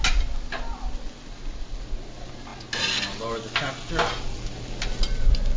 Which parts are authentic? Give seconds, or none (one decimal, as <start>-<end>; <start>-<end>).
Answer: 0.0-5.6